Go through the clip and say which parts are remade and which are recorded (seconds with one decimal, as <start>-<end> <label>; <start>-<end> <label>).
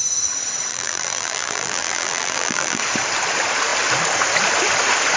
0.0-0.7 recorded; 0.7-2.8 remade; 2.8-5.2 recorded